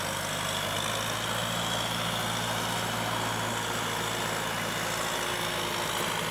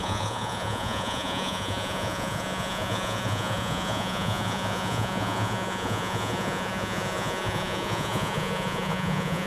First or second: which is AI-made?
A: second